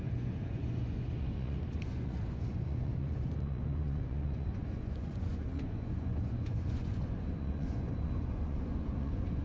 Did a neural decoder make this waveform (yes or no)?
yes